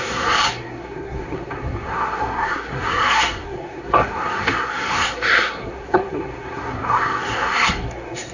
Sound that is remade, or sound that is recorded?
remade